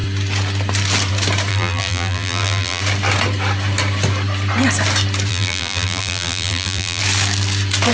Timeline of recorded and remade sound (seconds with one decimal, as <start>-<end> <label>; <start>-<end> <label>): 0.0-1.5 recorded; 1.5-2.8 remade; 2.8-5.3 recorded; 5.3-7.0 remade; 7.0-7.9 recorded